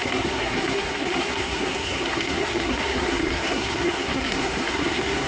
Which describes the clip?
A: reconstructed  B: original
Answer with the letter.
A